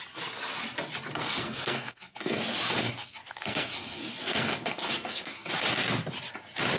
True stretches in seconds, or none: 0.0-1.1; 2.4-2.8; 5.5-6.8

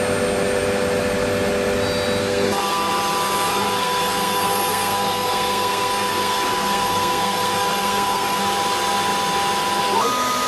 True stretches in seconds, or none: 0.0-2.2; 2.9-3.5; 8.4-10.5

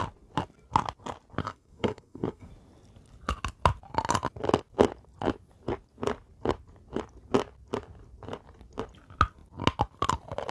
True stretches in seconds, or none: 0.0-1.4; 2.5-10.5

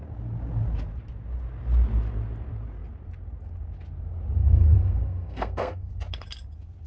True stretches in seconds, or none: 0.0-4.4; 5.9-6.9

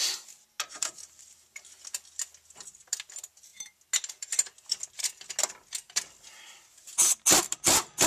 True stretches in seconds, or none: 0.0-8.1